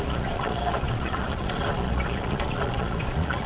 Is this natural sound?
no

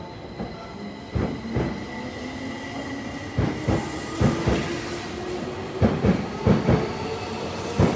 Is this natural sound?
yes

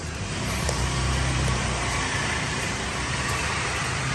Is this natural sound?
no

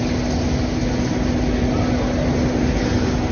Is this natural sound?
yes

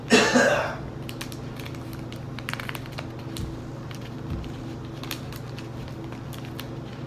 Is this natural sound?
yes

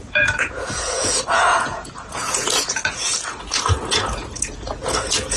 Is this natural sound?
no